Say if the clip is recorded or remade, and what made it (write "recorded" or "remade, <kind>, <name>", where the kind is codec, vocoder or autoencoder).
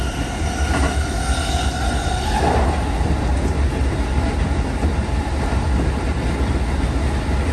recorded